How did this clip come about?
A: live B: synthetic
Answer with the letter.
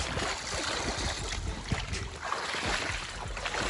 A